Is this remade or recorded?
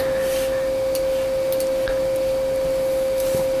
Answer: recorded